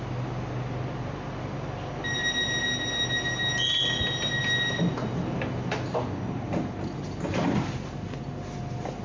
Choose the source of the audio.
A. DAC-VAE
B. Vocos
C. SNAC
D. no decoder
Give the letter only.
D